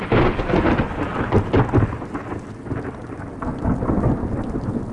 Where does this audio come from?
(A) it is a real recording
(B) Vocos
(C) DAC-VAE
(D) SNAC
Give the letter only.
A